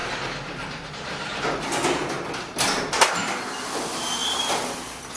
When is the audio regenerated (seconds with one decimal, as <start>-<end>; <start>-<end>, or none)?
none